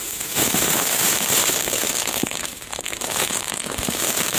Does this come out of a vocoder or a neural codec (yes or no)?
yes